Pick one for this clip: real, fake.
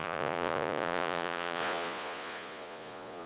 fake